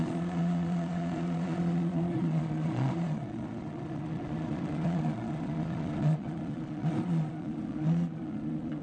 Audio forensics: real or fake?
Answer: fake